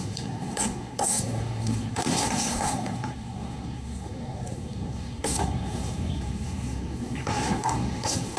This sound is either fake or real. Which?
fake